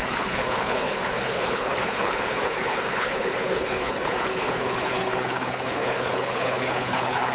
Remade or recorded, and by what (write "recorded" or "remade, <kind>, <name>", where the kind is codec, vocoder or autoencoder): remade, codec, HILCodec